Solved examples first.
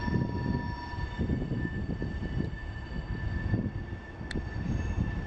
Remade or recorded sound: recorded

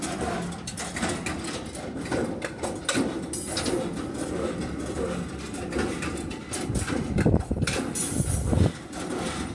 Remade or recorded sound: recorded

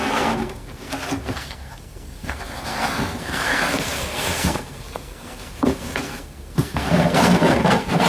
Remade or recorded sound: remade